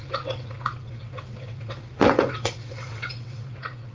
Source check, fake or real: fake